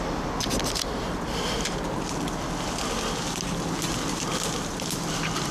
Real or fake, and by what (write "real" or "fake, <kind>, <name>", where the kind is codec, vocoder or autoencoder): real